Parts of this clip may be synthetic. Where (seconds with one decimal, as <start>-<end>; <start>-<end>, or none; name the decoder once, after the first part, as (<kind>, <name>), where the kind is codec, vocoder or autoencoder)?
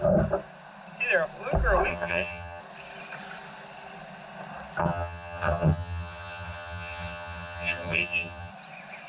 1.9-2.6 (vocoder, HiFi-GAN); 4.8-8.5